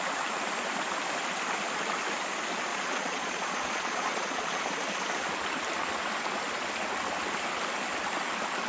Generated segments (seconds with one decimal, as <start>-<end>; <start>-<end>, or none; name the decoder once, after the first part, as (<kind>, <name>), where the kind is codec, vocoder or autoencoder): 2.7-4.6 (vocoder, Vocos)